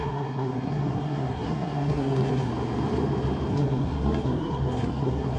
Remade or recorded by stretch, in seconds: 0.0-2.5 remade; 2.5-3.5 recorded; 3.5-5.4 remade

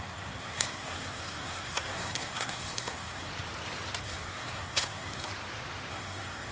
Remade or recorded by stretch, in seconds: 0.0-3.3 remade; 3.3-4.0 recorded; 4.0-5.3 remade; 5.3-5.9 recorded; 5.9-6.5 remade

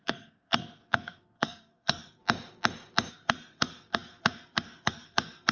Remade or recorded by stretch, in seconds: 0.0-2.2 remade; 2.2-3.1 recorded; 3.1-5.5 remade

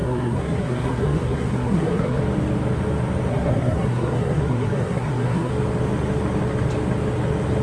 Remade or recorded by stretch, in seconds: 0.0-2.2 remade; 2.2-3.3 recorded; 3.3-5.5 remade; 5.5-7.6 recorded

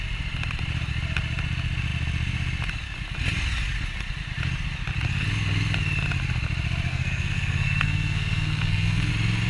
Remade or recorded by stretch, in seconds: 0.0-6.9 recorded; 6.9-9.1 remade; 9.1-9.5 recorded

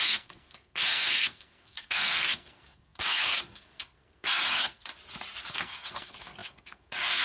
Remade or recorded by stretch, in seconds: 0.0-4.9 remade; 4.9-5.4 recorded; 5.4-7.2 remade

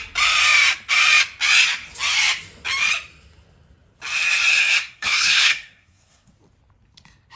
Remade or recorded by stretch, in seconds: 0.0-4.5 recorded; 4.5-6.3 remade; 6.3-7.4 recorded